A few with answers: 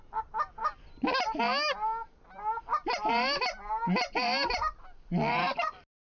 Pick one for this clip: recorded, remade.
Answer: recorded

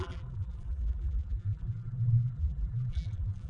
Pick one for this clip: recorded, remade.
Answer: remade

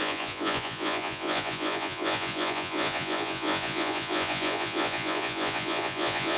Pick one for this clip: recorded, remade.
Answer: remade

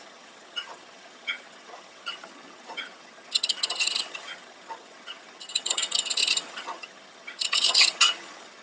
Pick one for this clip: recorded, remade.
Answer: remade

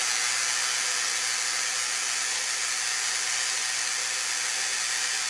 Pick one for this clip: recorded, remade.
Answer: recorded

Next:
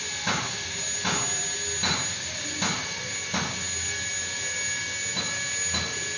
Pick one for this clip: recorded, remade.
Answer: recorded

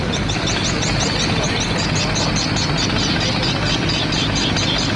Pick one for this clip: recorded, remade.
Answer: recorded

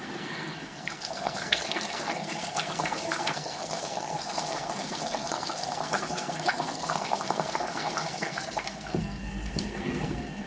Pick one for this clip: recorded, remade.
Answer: remade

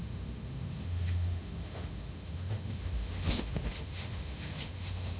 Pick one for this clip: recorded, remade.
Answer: remade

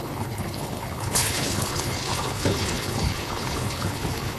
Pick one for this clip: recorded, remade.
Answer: remade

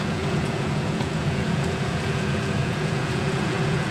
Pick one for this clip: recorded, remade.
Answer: remade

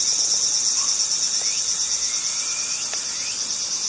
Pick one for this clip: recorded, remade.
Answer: recorded